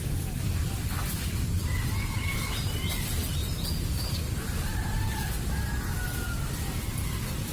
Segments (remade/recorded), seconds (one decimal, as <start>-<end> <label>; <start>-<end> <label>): 0.0-3.4 recorded; 3.4-5.3 remade; 5.3-7.5 recorded